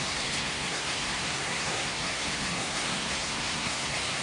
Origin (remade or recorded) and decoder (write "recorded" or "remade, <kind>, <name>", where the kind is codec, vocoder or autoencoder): remade, codec, SNAC